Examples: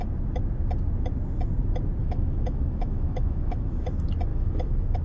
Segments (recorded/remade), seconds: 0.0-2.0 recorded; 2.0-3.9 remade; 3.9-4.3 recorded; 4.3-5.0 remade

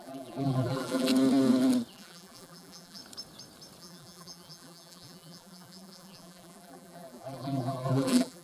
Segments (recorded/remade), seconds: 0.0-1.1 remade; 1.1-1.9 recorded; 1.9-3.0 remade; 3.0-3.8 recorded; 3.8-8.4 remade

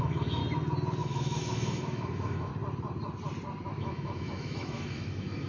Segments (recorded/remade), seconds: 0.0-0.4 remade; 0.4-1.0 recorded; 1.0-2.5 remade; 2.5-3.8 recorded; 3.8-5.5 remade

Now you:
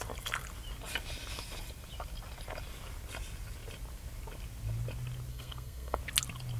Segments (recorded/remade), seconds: 0.0-5.3 recorded; 5.3-6.0 remade; 6.0-6.6 recorded

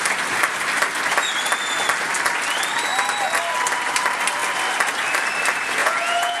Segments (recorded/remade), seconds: 0.0-5.8 recorded; 5.8-6.4 remade

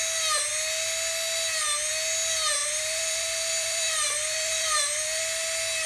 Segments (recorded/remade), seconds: 0.0-2.6 recorded; 2.6-5.2 remade; 5.2-5.9 recorded

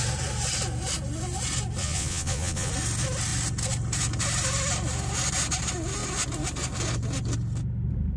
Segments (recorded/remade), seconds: 0.0-1.8 recorded; 1.8-2.7 remade; 2.7-8.2 recorded

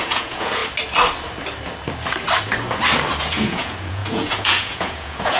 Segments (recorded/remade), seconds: 0.0-0.6 remade; 0.6-3.2 recorded; 3.2-5.4 remade